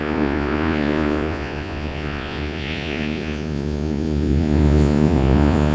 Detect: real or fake fake